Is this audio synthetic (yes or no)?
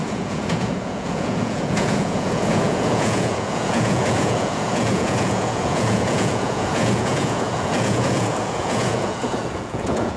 yes